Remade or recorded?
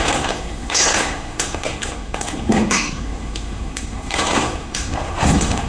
remade